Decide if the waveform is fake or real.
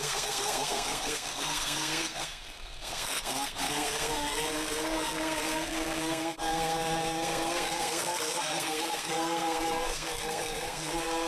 fake